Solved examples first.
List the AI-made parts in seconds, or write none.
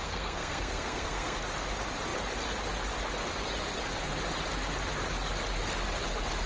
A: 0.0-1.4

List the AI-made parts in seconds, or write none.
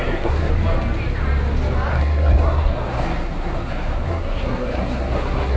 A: 0.0-0.5; 1.9-5.6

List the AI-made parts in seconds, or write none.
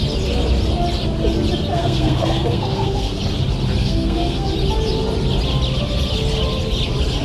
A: 1.7-3.2; 3.8-4.5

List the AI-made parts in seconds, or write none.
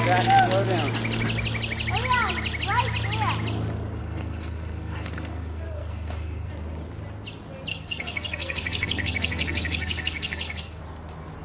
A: 4.0-6.5; 7.7-10.8